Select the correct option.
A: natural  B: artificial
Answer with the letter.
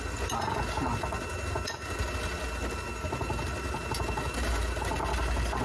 A